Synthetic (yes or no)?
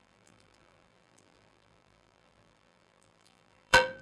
yes